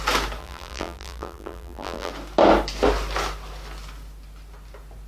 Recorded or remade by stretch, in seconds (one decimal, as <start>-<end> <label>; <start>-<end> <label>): 0.0-0.4 recorded; 0.4-2.1 remade; 2.1-5.1 recorded